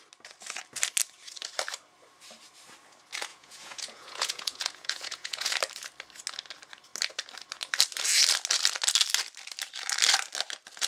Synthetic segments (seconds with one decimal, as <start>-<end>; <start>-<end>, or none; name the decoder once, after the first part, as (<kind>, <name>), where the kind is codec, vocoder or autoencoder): 3.3-5.5 (vocoder, Vocos)